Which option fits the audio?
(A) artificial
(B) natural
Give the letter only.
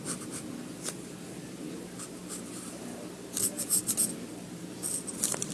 B